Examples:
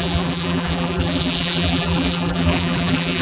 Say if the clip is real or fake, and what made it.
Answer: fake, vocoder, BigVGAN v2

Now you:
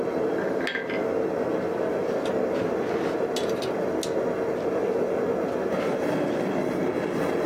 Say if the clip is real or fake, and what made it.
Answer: real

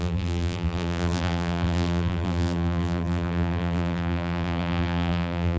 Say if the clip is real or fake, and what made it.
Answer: fake, vocoder, BigVGAN v2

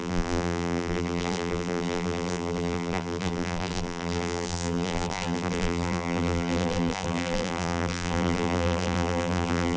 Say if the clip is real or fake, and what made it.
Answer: fake, vocoder, BigVGAN v2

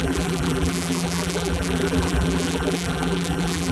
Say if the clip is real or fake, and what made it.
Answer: fake, vocoder, BigVGAN v2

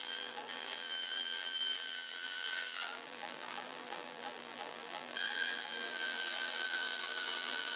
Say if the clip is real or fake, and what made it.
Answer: fake, vocoder, BigVGAN v2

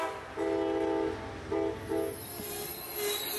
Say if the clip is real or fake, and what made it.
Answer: real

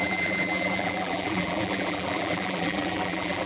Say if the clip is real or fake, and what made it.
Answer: fake, vocoder, BigVGAN v2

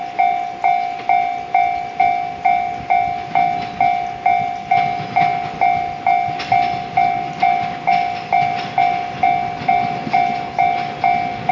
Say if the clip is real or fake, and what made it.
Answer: real